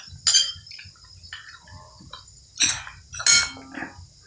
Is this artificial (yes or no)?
no